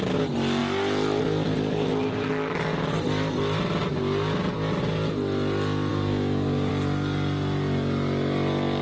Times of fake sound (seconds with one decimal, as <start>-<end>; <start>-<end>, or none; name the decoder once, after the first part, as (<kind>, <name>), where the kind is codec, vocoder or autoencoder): 5.9-6.7 (codec, DAC)